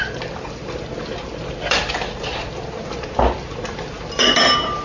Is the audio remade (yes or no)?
no